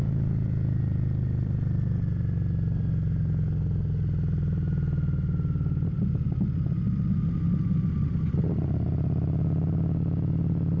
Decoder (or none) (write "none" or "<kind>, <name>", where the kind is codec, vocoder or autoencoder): none